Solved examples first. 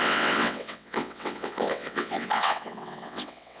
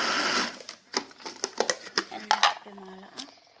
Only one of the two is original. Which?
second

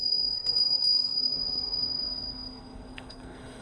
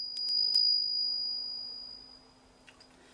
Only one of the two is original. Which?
second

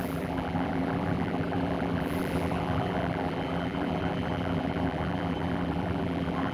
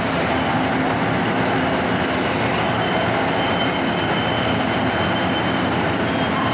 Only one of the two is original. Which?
second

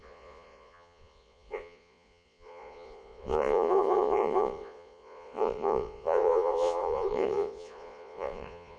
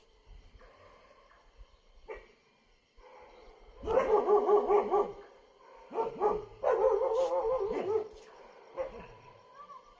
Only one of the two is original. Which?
second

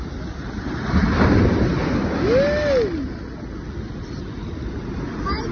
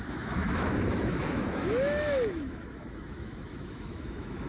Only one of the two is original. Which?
first